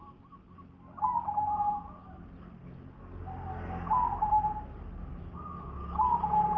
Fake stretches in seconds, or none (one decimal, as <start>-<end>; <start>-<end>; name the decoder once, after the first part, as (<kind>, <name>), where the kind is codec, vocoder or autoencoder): 5.1-5.8 (autoencoder, DAC-VAE)